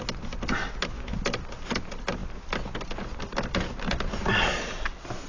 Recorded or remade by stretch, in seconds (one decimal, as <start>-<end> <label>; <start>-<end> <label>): 0.0-5.3 recorded